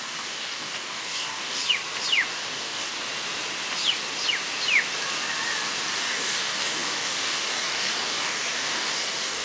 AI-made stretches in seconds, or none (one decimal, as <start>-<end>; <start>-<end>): 0.0-1.6; 2.3-2.9; 5.9-9.4